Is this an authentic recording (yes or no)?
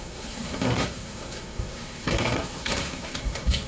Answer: no